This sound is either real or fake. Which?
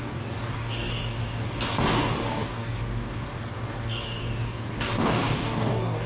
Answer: fake